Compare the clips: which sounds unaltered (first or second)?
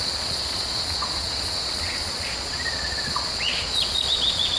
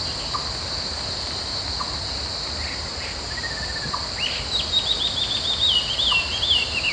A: second